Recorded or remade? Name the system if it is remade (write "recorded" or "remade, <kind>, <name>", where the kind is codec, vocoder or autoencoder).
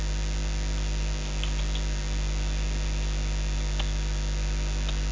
recorded